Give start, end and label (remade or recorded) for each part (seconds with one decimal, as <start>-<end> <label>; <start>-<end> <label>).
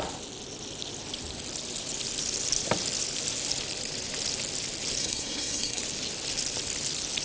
0.0-5.0 recorded; 5.0-5.8 remade; 5.8-7.2 recorded